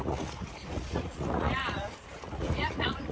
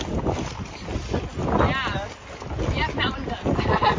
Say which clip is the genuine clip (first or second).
second